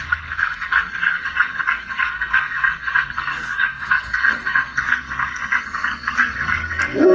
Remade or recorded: remade